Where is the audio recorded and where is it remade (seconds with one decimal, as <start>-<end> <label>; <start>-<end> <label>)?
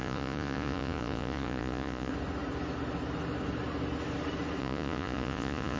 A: 0.0-2.1 remade; 2.1-4.6 recorded; 4.6-5.8 remade